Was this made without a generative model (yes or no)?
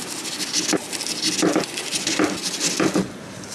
yes